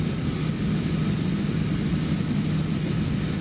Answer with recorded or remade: recorded